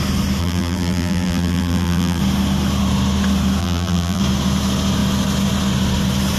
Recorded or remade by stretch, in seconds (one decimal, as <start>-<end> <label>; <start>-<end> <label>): 0.0-0.4 recorded; 0.4-2.2 remade; 2.2-3.6 recorded; 3.6-4.2 remade; 4.2-6.4 recorded